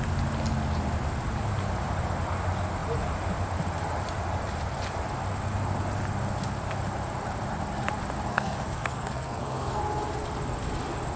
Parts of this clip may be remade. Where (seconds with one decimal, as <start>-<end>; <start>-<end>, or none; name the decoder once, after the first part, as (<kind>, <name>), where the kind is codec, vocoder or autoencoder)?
8.3-9.8 (codec, SNAC)